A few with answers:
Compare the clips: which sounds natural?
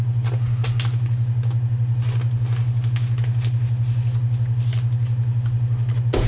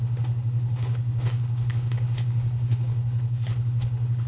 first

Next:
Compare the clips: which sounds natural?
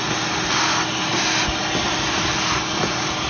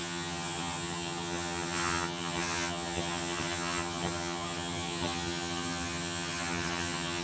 first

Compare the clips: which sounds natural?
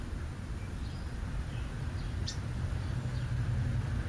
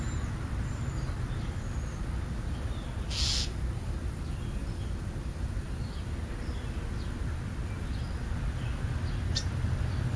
second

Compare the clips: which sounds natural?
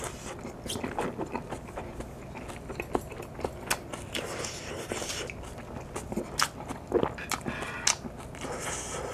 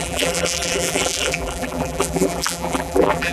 first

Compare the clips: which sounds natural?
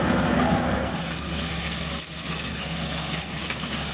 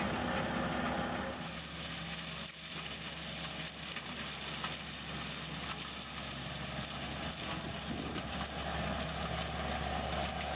second